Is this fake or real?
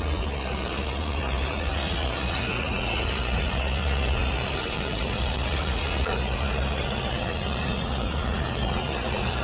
fake